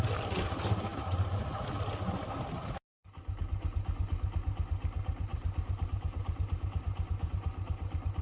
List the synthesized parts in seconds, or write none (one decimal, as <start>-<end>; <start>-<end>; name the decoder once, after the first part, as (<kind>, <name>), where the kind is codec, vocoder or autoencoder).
5.3-7.3 (vocoder, BigVGAN v2)